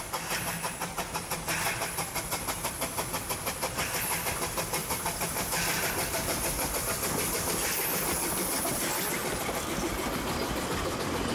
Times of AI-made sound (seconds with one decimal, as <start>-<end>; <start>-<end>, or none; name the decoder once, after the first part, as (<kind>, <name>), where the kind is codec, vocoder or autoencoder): 0.0-11.3 (vocoder, BigVGAN v2)